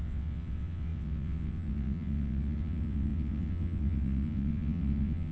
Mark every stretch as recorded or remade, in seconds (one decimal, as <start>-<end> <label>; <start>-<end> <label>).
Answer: 0.0-5.3 remade